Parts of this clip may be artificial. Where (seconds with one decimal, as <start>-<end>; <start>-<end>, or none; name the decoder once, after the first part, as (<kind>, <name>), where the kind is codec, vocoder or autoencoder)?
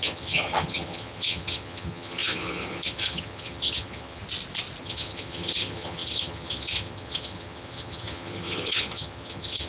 0.0-4.2 (vocoder, HiFi-GAN); 4.8-9.7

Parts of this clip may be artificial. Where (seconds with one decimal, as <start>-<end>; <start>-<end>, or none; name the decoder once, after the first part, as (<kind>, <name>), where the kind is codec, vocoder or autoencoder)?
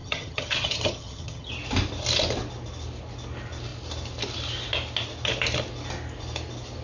0.0-1.5 (vocoder, HiFi-GAN)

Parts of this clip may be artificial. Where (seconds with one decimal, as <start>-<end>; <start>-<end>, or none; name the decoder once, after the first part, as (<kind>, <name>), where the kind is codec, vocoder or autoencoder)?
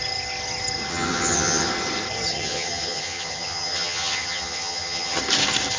0.9-1.7 (vocoder, HiFi-GAN); 2.3-5.2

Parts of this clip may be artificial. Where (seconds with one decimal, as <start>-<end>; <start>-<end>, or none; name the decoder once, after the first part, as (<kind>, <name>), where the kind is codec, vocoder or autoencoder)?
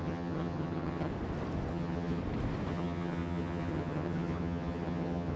0.0-1.1 (vocoder, HiFi-GAN); 1.7-2.2; 2.7-5.4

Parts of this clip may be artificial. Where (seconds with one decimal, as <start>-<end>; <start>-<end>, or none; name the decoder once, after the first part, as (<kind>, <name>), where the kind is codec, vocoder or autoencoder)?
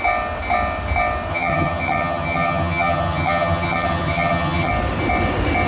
1.3-4.7 (vocoder, HiFi-GAN)